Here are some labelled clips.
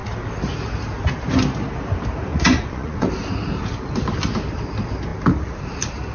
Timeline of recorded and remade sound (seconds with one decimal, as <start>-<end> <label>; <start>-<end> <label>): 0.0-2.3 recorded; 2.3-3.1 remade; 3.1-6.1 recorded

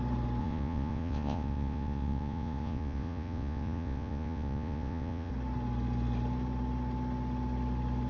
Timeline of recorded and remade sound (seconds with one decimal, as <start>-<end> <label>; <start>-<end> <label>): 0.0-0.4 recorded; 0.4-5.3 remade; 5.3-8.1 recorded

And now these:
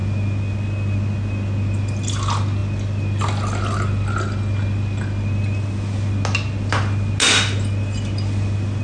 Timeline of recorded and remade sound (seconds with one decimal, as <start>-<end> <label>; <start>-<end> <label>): 0.0-8.8 recorded

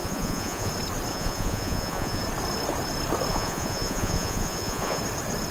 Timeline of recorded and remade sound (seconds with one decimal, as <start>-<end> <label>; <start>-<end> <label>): 0.0-0.7 remade; 0.7-1.1 recorded; 1.1-2.2 remade; 2.2-3.3 recorded; 3.3-5.0 remade; 5.0-5.5 recorded

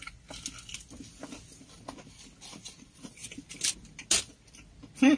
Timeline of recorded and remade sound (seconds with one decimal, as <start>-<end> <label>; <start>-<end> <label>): 0.0-5.2 recorded

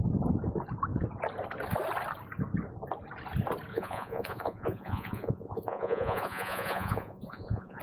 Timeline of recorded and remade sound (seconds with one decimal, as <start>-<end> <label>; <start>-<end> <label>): 0.0-3.7 recorded; 3.7-7.8 remade

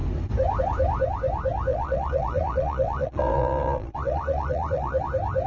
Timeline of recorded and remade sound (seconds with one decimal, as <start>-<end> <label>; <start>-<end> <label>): 0.0-1.7 recorded; 1.7-5.0 remade; 5.0-5.5 recorded

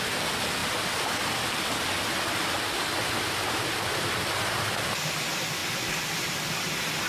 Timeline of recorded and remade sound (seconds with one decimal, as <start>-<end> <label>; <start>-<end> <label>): 0.0-7.1 recorded